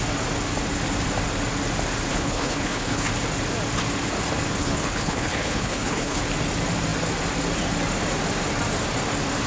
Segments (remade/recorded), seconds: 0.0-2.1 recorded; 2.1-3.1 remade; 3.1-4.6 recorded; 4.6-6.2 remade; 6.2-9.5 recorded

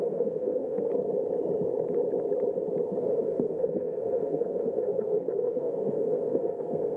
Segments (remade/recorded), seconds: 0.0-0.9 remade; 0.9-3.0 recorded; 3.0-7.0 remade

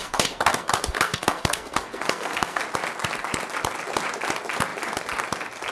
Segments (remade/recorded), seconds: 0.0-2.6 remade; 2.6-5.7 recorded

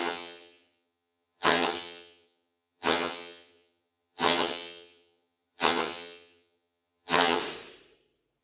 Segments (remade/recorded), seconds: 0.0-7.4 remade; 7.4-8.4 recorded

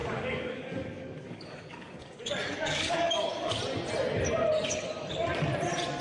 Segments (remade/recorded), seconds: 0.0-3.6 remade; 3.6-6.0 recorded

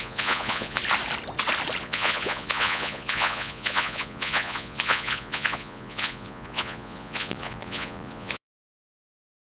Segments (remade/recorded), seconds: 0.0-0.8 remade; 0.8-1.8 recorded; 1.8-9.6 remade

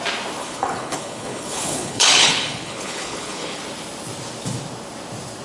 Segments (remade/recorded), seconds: 0.0-0.4 recorded; 0.4-3.6 remade; 3.6-5.4 recorded

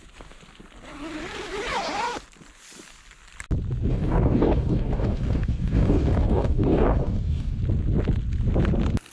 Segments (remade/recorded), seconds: 0.0-3.9 recorded; 3.9-7.6 remade; 7.6-9.1 recorded